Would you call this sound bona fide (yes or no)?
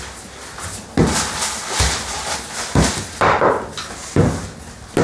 yes